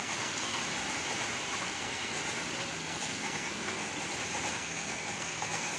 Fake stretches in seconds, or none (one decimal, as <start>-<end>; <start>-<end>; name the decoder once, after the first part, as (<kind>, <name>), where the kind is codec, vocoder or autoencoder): 0.0-0.6 (codec, SNAC); 1.6-2.2; 2.8-3.9; 4.5-5.8